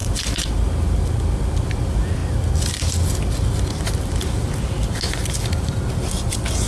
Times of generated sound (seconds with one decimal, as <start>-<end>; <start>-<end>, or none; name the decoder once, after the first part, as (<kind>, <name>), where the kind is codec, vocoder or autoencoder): none

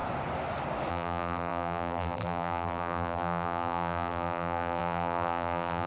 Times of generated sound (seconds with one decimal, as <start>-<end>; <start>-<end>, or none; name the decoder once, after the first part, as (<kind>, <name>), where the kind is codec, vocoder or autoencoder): 0.9-5.9 (vocoder, BigVGAN v2)

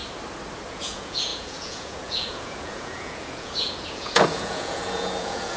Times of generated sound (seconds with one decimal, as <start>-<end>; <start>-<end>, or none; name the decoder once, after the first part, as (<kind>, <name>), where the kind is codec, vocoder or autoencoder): 0.7-5.6 (vocoder, Vocos)

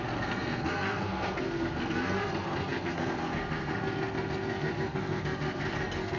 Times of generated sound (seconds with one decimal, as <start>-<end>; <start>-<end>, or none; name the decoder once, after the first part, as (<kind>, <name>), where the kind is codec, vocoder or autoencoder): 0.0-6.2 (codec, SNAC)

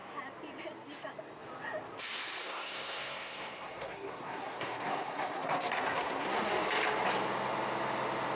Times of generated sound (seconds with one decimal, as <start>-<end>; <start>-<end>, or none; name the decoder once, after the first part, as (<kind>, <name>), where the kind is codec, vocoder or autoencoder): 2.4-6.5 (codec, SNAC)

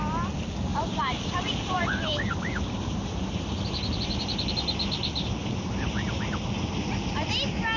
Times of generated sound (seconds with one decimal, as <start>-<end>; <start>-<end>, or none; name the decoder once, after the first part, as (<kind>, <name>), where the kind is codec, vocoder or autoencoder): 0.7-4.5 (vocoder, BigVGAN v2); 5.4-6.2

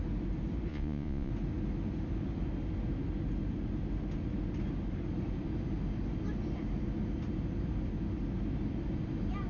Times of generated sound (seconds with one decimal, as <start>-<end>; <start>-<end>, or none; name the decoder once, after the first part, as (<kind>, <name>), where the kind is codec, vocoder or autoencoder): 0.7-1.3 (vocoder, Vocos)

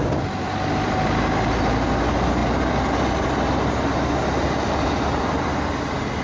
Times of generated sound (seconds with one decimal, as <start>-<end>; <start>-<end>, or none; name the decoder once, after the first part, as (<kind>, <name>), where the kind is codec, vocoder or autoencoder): 0.0-6.2 (vocoder, BigVGAN v2)